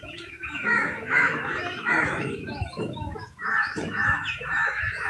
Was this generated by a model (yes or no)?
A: yes